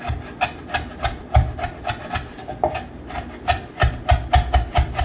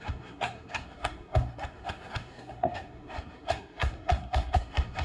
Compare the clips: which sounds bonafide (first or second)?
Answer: first